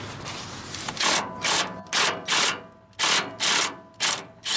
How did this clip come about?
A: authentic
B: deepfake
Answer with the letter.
A